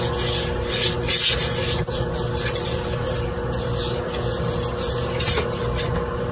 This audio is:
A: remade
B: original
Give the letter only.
B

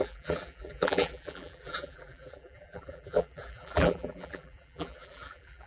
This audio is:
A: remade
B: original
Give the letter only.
A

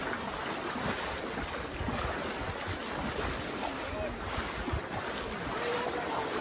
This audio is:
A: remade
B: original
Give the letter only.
B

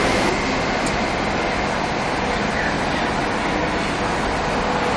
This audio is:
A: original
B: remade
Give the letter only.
A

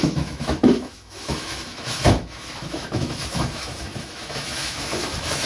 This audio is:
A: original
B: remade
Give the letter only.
B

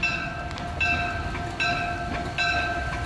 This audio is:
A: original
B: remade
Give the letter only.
A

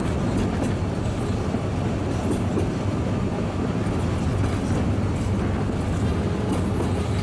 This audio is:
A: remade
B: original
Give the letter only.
B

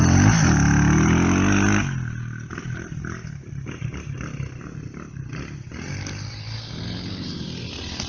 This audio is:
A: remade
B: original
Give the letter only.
B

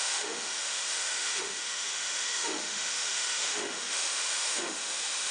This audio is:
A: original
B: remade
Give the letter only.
B